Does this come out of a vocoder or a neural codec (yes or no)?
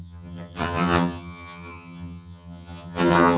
yes